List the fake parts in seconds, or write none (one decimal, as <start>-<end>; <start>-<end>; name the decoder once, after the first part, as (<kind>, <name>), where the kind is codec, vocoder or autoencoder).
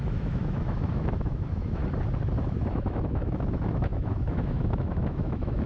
0.0-1.8 (autoencoder, DAC-VAE); 2.4-5.7